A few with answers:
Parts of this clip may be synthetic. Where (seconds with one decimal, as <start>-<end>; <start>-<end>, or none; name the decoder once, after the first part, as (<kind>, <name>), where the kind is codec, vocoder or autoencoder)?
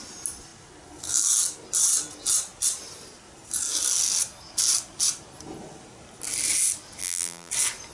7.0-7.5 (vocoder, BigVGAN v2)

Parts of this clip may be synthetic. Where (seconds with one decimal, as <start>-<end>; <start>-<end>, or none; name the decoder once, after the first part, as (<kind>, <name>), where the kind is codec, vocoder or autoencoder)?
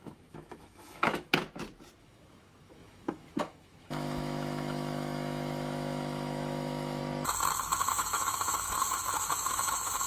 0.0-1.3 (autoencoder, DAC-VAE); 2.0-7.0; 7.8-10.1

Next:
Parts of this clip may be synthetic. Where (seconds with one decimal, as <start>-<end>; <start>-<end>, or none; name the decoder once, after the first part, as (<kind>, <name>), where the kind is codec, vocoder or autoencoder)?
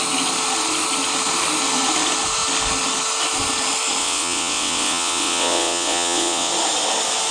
4.0-6.5 (vocoder, WaveNeXt)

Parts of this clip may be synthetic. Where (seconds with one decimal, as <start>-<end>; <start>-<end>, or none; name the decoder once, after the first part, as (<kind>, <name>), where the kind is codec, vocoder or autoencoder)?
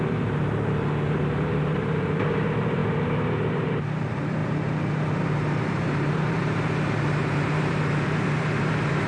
0.0-2.8 (vocoder, BigVGAN v2); 3.5-9.1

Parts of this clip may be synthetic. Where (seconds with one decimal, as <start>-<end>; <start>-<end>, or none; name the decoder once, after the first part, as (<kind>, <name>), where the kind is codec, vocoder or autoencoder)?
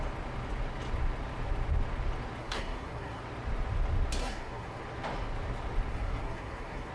2.4-3.2 (codec, SNAC); 4.2-4.8; 5.9-6.9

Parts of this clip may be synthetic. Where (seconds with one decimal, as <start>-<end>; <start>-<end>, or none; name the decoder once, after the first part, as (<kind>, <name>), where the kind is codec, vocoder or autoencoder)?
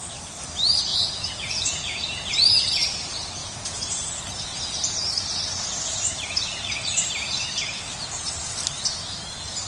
0.9-2.0 (vocoder, Vocos); 3.4-4.1; 4.5-5.2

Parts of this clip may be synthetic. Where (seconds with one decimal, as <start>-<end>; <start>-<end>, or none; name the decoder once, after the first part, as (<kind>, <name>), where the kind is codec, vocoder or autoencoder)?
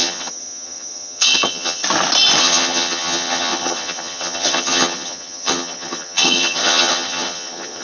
0.0-1.8 (vocoder, HiFi-GAN); 2.4-7.8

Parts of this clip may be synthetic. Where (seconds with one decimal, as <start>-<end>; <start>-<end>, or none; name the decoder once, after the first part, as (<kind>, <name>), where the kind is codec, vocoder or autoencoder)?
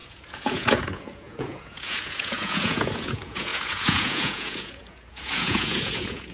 0.0-6.3 (vocoder, Vocos)